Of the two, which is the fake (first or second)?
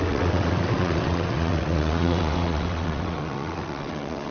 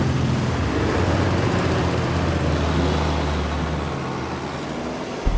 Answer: first